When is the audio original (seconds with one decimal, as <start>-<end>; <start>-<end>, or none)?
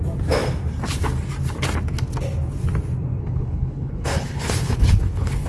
0.0-3.2